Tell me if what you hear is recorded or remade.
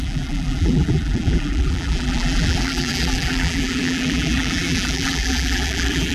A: remade